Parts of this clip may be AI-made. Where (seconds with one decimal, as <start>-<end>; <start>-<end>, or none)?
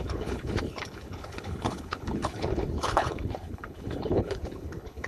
0.0-5.1